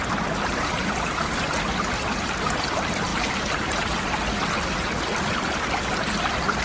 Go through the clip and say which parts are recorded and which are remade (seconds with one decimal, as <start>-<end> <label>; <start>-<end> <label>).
0.0-6.6 recorded